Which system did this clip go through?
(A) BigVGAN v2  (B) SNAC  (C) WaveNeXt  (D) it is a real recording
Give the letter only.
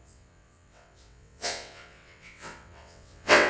C